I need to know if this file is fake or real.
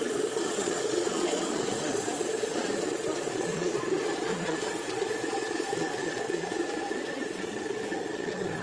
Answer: fake